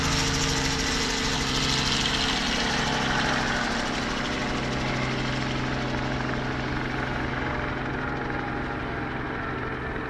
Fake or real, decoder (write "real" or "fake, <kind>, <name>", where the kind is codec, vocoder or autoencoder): real